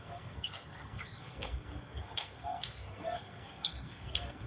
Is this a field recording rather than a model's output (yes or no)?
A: no